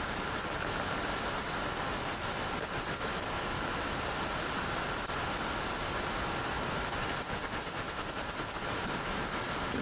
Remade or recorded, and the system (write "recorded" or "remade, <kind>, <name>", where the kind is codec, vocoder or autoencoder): recorded